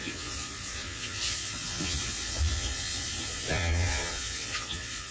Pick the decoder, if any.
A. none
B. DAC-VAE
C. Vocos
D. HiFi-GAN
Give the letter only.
C